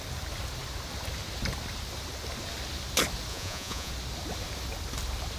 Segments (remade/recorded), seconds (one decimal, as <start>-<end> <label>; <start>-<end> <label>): 0.0-3.3 recorded; 3.3-3.9 remade; 3.9-5.4 recorded